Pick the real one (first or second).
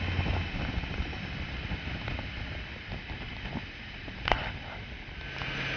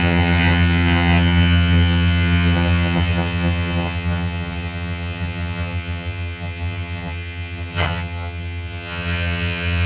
first